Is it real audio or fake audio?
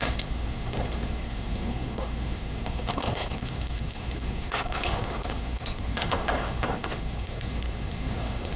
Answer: fake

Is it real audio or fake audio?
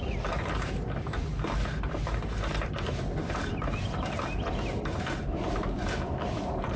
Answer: real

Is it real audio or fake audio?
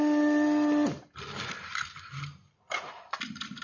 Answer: real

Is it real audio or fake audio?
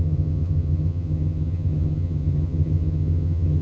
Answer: fake